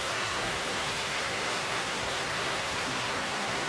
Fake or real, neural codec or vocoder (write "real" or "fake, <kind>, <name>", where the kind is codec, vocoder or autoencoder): fake, codec, SNAC